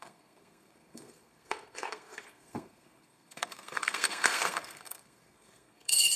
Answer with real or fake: fake